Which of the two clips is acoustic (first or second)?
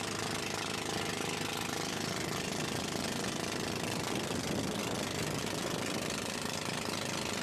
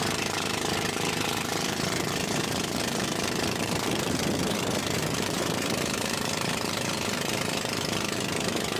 first